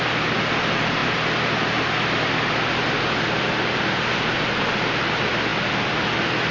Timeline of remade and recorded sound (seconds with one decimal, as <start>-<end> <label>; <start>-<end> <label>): 0.0-6.5 recorded